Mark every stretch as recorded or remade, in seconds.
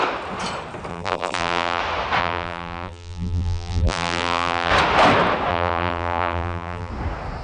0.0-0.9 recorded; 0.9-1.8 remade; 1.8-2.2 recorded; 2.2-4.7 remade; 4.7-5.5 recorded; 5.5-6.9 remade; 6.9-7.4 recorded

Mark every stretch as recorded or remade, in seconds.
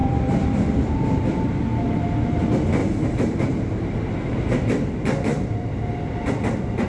0.0-1.2 remade; 1.2-2.8 recorded; 2.8-4.4 remade; 4.4-5.3 recorded; 5.3-5.8 remade; 5.8-6.9 recorded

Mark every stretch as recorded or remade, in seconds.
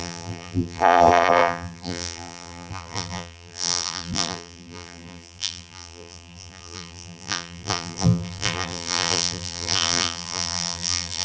0.0-11.2 remade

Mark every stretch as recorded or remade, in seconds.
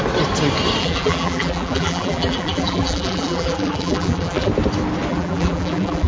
0.0-0.8 recorded; 0.8-4.5 remade; 4.5-5.1 recorded; 5.1-6.1 remade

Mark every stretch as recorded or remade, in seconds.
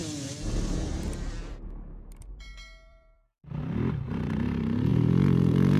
0.0-2.9 recorded; 2.9-3.6 remade; 3.6-5.8 recorded